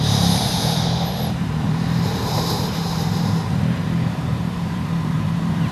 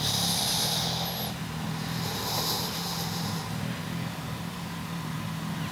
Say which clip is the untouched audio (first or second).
second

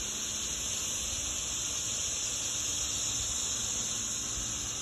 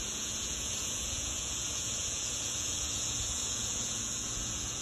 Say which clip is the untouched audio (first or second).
first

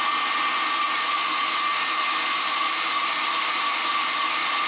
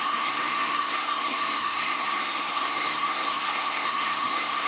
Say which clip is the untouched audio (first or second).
first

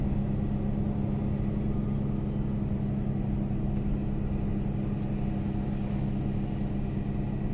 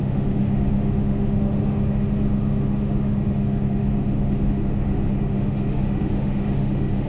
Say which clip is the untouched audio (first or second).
first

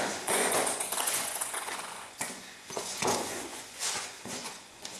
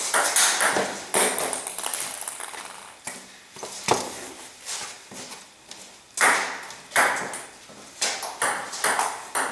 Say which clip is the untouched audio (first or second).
second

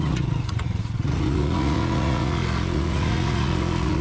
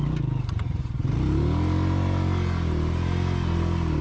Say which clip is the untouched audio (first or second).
second